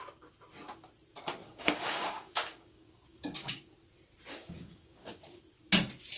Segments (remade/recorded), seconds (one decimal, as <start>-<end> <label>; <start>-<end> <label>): 0.0-1.4 recorded; 1.4-3.7 remade; 3.7-4.3 recorded; 4.3-5.4 remade; 5.4-6.2 recorded